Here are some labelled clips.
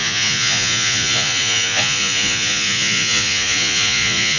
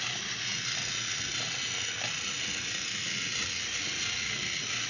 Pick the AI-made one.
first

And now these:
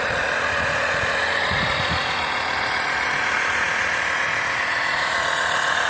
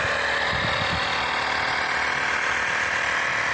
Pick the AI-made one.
first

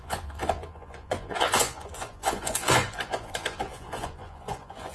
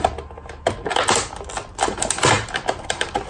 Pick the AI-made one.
first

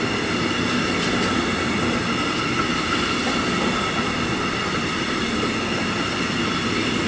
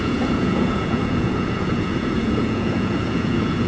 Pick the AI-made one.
second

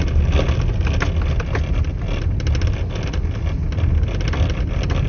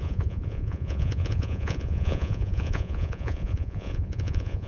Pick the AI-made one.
second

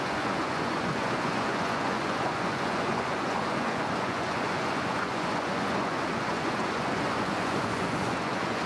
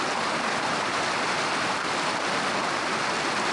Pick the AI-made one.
first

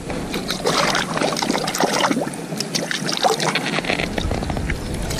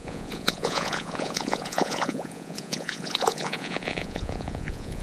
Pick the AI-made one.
second